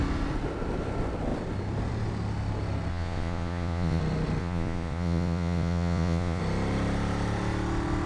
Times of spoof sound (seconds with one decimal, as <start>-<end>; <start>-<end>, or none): 2.9-4.0; 4.4-6.4